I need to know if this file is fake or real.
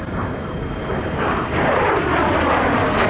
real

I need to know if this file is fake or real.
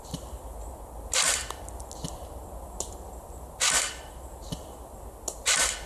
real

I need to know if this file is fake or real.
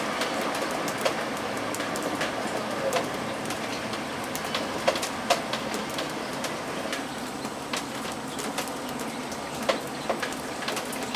real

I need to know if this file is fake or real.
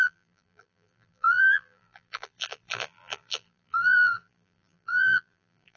fake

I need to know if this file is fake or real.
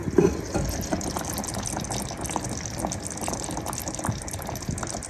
real